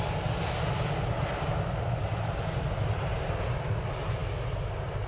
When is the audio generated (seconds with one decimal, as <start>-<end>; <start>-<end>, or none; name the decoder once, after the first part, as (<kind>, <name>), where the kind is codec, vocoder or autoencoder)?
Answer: none